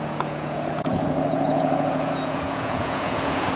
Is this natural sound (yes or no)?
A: no